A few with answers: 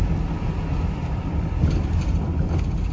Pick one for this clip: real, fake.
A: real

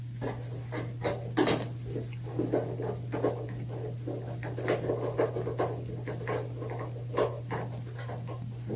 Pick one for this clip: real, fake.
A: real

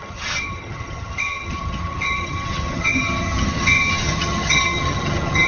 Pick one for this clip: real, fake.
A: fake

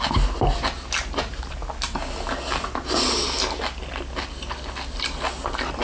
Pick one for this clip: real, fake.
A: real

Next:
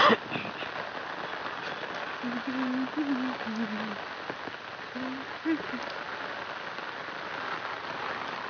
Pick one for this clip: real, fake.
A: real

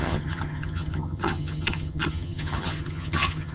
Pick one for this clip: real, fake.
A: fake